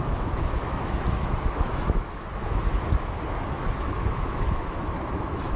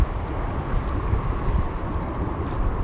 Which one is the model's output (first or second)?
first